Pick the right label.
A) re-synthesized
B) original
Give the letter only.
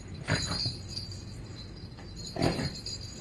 B